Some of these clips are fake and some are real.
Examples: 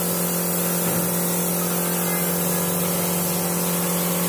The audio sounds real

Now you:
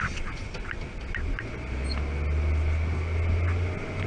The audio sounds real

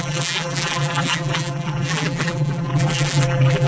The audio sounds fake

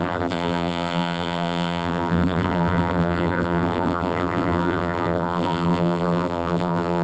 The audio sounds fake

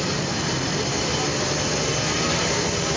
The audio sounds fake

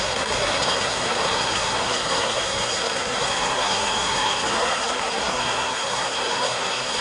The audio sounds fake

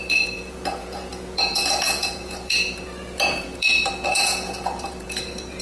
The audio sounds fake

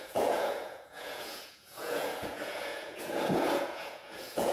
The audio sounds fake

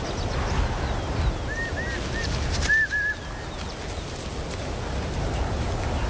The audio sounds real